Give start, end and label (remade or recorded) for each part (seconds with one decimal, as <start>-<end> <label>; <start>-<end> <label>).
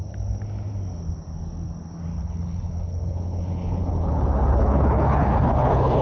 0.0-2.1 recorded; 2.1-6.0 remade